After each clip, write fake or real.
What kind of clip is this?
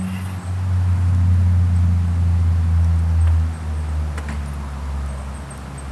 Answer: real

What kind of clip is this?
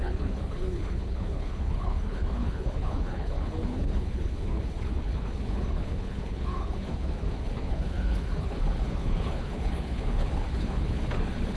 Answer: fake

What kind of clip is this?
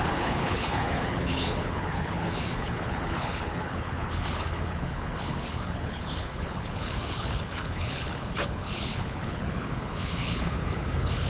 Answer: fake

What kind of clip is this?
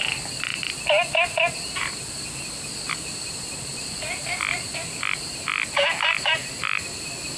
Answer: real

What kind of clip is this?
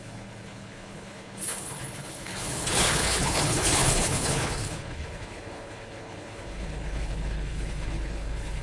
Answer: fake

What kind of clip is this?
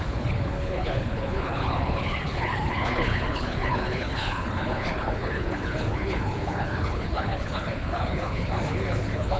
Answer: fake